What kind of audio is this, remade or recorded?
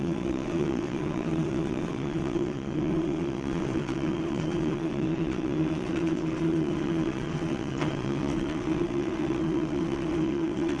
remade